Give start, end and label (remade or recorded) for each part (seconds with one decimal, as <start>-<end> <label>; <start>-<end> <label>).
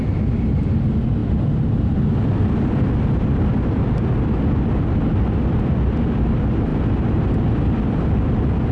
0.0-8.7 recorded